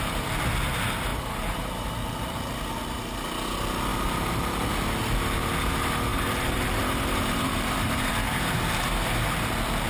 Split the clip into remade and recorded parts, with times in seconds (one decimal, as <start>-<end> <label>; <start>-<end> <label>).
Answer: 0.0-1.1 recorded; 1.1-1.7 remade; 1.7-6.1 recorded; 6.1-8.1 remade; 8.1-9.9 recorded